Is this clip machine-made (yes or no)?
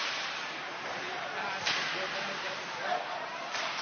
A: no